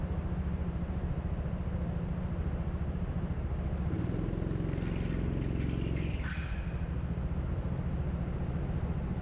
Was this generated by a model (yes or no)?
no